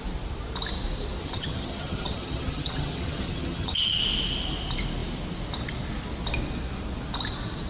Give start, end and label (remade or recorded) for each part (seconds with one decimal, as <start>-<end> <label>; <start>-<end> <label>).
0.0-1.2 recorded; 1.2-4.0 remade; 4.0-7.7 recorded